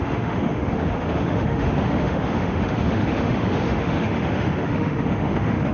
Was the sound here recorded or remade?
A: remade